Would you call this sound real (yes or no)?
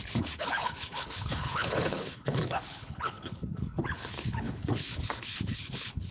no